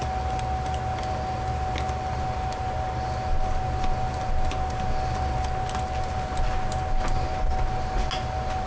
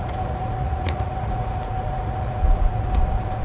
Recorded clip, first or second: first